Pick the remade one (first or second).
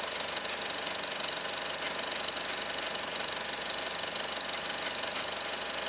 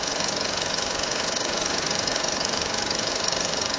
second